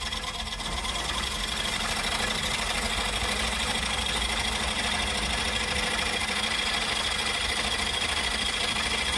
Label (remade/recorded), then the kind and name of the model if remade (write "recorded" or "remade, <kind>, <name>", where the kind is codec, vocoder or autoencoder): recorded